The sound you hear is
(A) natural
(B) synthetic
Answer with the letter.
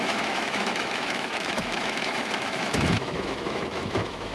B